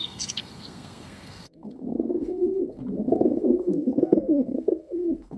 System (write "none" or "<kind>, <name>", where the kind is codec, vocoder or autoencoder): codec, SNAC